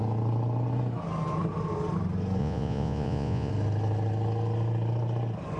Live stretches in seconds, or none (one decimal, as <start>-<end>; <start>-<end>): 0.0-2.4; 3.5-5.6